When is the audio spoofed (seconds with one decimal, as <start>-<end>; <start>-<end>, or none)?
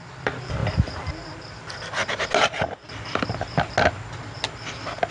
0.0-2.0